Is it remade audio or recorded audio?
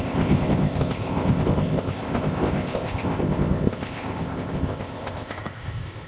remade